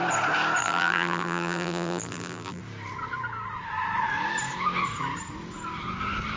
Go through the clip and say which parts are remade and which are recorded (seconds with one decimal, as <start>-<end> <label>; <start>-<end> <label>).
0.0-0.6 recorded; 0.6-2.6 remade; 2.6-6.4 recorded

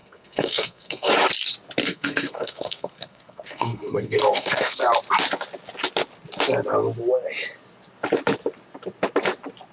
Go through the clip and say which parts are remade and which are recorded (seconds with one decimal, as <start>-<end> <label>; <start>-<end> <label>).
0.0-1.1 remade; 1.1-1.8 recorded; 1.8-4.8 remade; 4.8-9.7 recorded

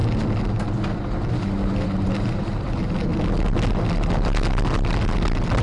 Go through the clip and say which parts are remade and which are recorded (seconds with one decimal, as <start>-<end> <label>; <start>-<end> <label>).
0.0-1.3 recorded; 1.3-3.1 remade; 3.1-5.6 recorded

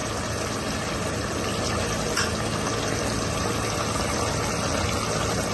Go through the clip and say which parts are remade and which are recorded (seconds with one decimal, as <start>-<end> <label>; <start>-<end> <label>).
0.0-5.5 recorded

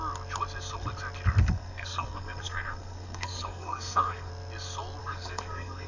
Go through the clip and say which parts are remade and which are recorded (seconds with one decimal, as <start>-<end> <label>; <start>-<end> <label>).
0.0-1.4 recorded; 1.4-4.3 remade; 4.3-5.0 recorded; 5.0-5.9 remade

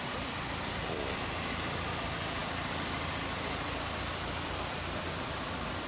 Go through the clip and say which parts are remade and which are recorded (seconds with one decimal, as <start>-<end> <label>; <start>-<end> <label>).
0.0-5.9 recorded